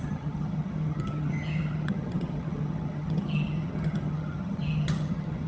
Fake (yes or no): yes